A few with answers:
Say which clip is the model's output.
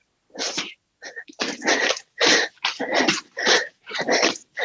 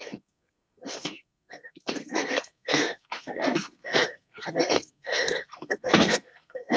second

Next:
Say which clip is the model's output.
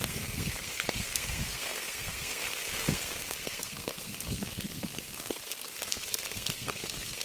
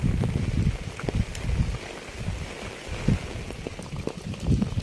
first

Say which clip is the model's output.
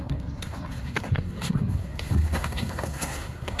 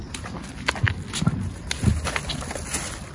first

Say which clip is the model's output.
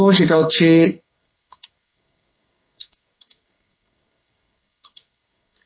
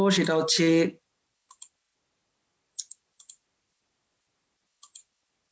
first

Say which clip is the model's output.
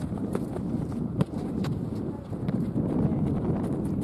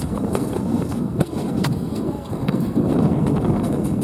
second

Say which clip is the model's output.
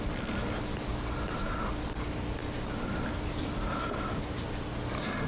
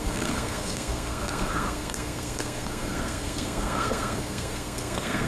second